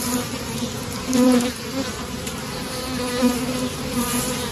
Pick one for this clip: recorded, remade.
recorded